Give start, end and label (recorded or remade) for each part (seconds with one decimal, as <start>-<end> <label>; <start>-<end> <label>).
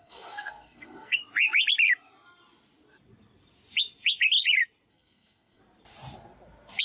0.0-1.2 remade; 1.2-4.9 recorded; 4.9-5.6 remade; 5.6-6.8 recorded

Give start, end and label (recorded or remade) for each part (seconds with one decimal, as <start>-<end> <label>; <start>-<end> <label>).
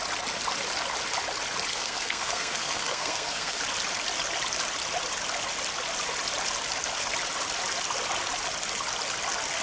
0.0-1.7 recorded; 1.7-3.6 remade; 3.6-9.6 recorded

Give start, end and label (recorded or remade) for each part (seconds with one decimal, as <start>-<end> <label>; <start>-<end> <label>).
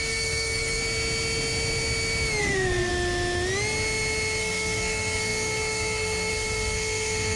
0.0-0.8 remade; 0.8-2.4 recorded; 2.4-2.9 remade; 2.9-4.4 recorded; 4.4-7.4 remade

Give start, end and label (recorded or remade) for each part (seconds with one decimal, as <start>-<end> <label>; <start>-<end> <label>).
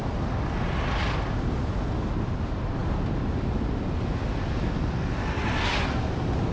0.0-6.5 recorded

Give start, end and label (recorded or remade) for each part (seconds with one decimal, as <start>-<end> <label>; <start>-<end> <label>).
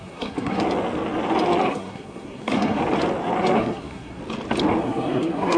0.0-0.6 remade; 0.6-1.7 recorded; 1.7-2.8 remade; 2.8-3.6 recorded; 3.6-4.2 remade; 4.2-4.8 recorded; 4.8-5.6 remade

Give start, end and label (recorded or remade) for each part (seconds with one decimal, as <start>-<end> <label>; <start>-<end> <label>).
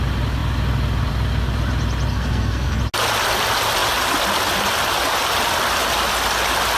0.0-2.1 recorded; 2.1-2.8 remade; 2.8-6.8 recorded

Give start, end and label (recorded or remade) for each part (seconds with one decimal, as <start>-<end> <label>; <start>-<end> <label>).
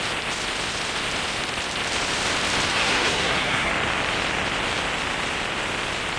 0.0-2.7 recorded; 2.7-3.7 remade; 3.7-6.2 recorded